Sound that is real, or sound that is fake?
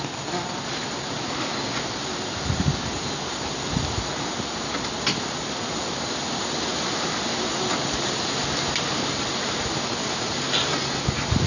real